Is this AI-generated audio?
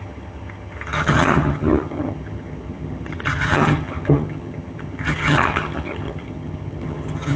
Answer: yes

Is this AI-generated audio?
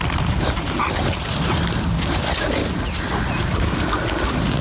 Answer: no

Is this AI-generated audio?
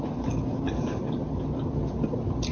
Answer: no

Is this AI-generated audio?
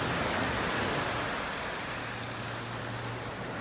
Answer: no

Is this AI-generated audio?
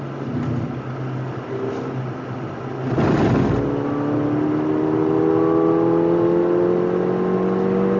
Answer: no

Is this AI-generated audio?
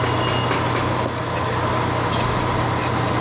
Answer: no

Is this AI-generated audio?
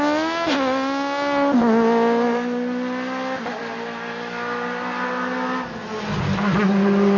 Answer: no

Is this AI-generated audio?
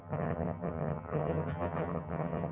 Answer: yes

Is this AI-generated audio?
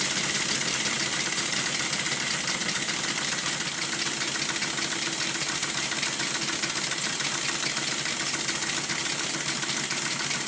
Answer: no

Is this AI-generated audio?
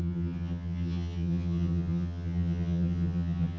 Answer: yes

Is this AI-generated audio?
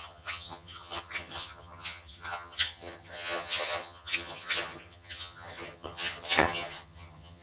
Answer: yes